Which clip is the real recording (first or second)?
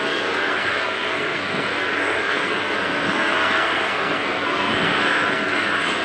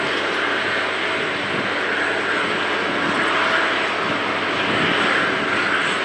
second